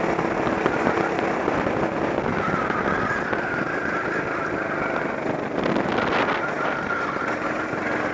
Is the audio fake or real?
real